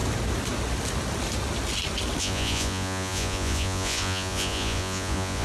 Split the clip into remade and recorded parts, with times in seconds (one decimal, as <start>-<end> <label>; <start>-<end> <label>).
0.0-2.2 recorded; 2.2-5.4 remade